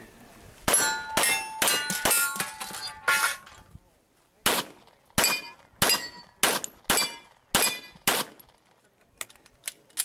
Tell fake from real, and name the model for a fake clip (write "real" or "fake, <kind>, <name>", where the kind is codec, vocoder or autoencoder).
real